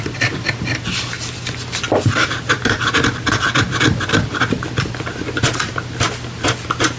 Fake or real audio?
real